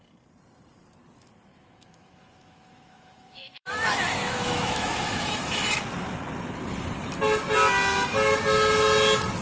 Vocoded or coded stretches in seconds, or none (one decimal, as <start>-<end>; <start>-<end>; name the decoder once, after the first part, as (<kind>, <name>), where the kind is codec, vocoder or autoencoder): 1.5-5.8 (autoencoder, DAC-VAE)

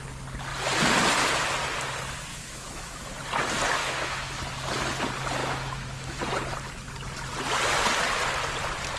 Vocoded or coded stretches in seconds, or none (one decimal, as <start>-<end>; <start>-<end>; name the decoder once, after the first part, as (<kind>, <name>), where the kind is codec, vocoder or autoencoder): 2.3-3.1 (autoencoder, DAC-VAE); 3.8-4.4; 5.4-6.2

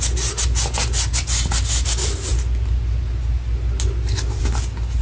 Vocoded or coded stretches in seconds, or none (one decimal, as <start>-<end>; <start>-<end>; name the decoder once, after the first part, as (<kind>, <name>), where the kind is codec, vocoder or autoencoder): none